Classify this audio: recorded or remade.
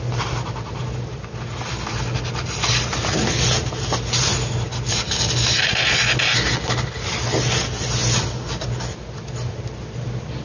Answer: recorded